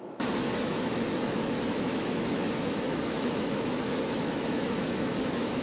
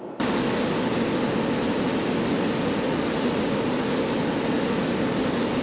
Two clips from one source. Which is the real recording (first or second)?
second